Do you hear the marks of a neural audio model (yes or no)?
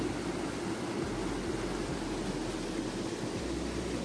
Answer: no